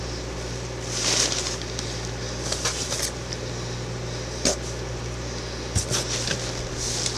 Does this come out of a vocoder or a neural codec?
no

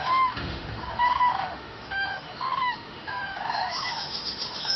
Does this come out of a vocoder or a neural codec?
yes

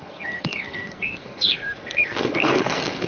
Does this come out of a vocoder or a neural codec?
yes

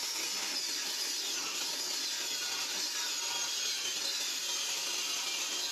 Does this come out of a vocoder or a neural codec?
no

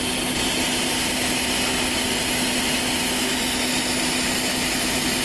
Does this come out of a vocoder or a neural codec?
no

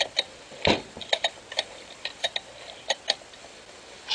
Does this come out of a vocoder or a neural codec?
no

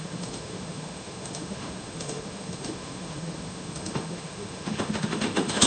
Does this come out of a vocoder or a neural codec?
yes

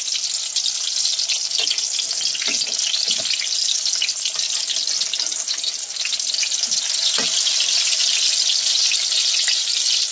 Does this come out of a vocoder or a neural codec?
no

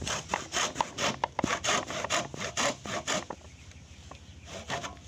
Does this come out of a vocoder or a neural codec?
no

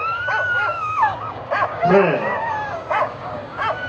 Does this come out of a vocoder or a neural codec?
yes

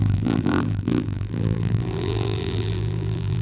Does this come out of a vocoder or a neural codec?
yes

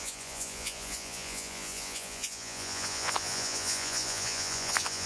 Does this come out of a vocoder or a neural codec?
yes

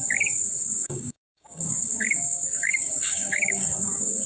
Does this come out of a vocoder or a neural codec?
yes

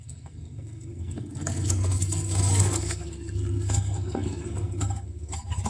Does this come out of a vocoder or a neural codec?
yes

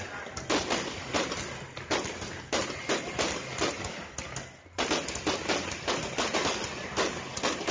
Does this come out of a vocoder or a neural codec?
no